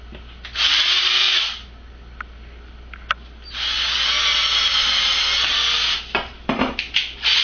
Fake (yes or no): no